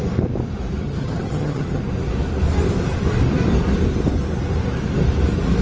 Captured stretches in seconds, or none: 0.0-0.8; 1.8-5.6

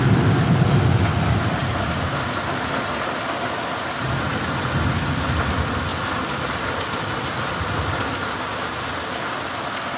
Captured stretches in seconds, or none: 0.0-10.0

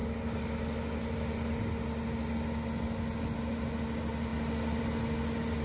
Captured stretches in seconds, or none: 0.0-5.6

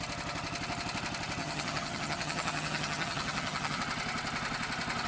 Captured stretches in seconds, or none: 0.0-1.4; 3.8-5.1

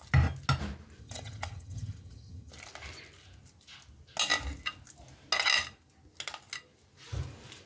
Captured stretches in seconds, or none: 0.0-1.0; 2.5-7.7

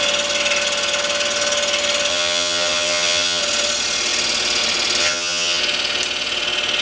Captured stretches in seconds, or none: 0.0-2.1; 3.4-5.0; 5.6-6.8